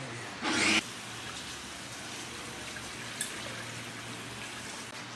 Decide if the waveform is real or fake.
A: real